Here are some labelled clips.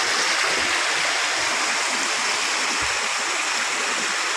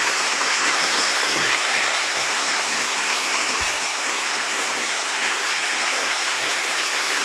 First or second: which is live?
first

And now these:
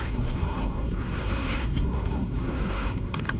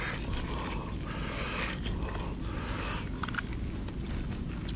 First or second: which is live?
second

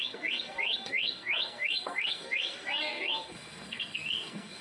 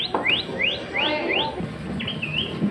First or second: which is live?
second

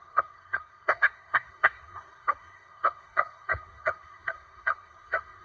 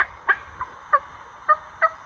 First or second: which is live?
second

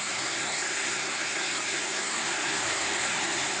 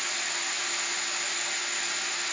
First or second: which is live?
second